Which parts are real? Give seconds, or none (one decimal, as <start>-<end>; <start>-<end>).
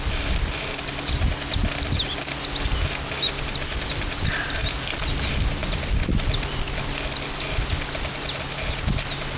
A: 0.0-9.4